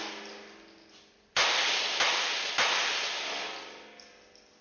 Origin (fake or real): real